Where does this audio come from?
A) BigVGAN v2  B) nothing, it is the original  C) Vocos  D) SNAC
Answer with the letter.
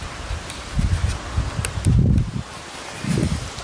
B